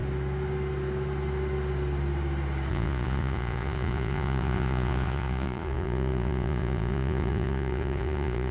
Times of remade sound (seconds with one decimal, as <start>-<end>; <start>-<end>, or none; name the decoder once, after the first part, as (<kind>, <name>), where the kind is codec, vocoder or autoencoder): 2.7-8.5 (vocoder, Vocos)